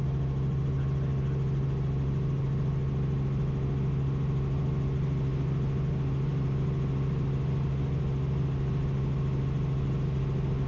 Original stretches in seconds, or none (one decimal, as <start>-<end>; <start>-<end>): 0.0-10.7